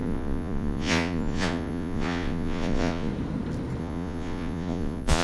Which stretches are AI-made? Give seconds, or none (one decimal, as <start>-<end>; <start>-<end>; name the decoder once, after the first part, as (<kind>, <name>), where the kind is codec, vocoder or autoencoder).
0.0-3.1 (vocoder, Vocos); 3.8-5.2